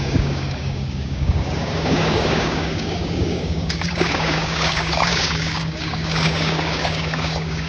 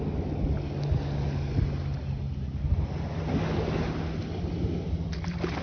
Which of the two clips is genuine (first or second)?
second